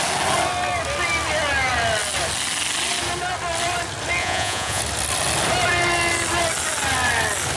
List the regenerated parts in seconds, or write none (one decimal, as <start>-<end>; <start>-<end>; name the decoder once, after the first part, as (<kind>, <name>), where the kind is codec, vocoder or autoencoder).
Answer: 4.2-4.8 (vocoder, Vocos)

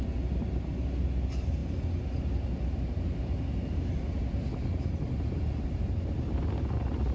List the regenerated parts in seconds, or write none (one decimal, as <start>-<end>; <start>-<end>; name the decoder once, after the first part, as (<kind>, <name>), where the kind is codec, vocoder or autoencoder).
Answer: none

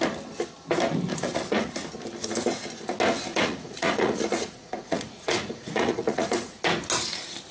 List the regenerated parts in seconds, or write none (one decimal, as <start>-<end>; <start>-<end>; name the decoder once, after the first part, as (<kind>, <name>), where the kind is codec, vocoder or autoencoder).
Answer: 1.1-1.7 (vocoder, Vocos); 3.3-6.6

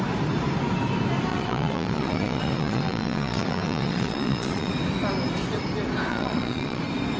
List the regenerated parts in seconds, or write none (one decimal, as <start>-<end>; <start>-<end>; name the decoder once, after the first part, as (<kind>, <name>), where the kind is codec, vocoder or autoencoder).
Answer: 1.3-4.7 (vocoder, Vocos); 6.1-6.8

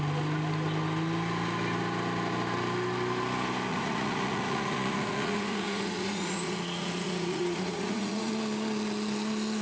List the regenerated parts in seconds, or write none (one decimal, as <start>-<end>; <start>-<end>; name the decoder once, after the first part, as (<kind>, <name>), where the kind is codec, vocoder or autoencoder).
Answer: 3.7-8.3 (vocoder, Vocos)